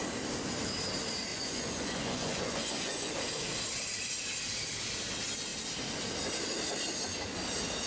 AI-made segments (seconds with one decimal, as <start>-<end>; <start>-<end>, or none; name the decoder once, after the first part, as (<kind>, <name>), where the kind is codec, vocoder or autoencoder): 1.3-3.1 (vocoder, Vocos)